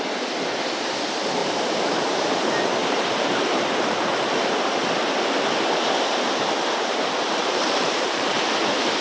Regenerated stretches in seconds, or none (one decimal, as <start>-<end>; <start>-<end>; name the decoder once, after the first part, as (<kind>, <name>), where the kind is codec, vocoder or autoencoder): 1.4-2.4 (vocoder, BigVGAN v2); 2.8-4.3; 7.4-8.3